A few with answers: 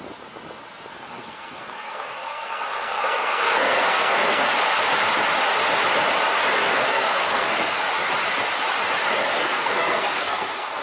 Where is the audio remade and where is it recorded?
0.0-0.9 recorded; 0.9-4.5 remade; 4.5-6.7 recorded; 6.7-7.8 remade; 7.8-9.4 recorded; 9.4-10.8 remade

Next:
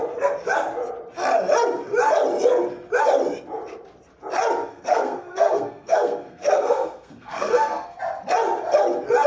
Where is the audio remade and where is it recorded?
0.0-4.7 recorded; 4.7-8.0 remade; 8.0-9.3 recorded

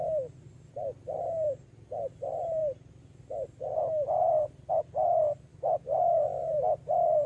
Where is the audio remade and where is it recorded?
0.0-5.5 recorded; 5.5-6.5 remade; 6.5-7.3 recorded